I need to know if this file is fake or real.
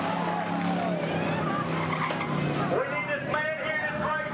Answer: real